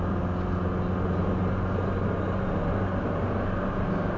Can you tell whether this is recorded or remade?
recorded